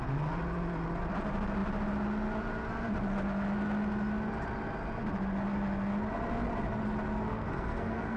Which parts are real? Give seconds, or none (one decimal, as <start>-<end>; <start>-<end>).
0.0-7.3